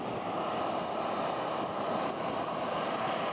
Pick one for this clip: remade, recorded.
recorded